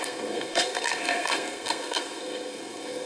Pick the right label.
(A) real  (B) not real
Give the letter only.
B